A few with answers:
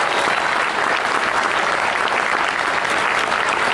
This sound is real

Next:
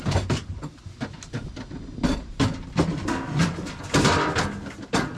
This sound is real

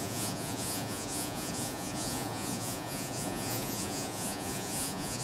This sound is fake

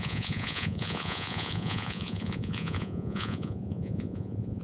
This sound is fake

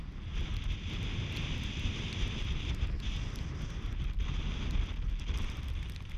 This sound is real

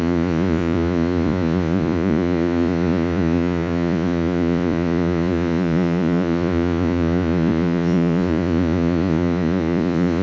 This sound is fake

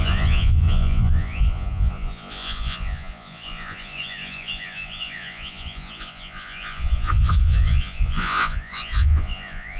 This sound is fake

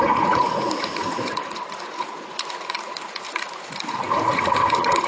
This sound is fake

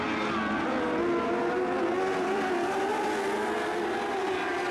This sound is real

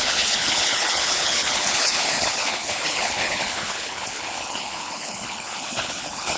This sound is fake